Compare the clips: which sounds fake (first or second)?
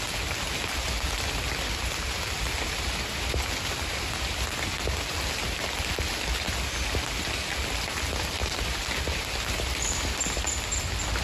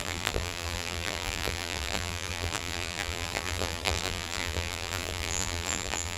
second